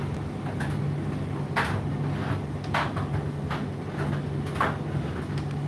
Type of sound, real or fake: real